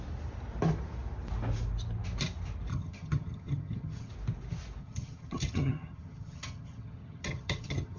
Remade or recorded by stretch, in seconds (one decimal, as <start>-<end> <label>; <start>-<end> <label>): 0.0-2.7 recorded; 2.7-4.1 remade; 4.1-4.8 recorded; 4.8-8.0 remade